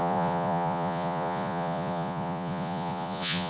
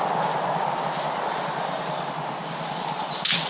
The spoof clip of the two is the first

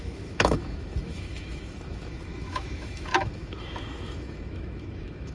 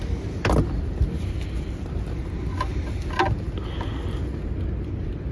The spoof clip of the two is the first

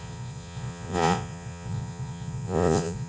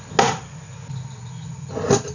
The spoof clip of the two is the first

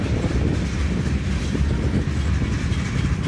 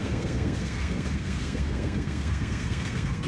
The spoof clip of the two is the second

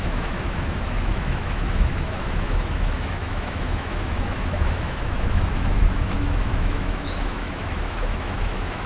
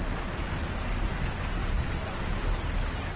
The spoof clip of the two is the first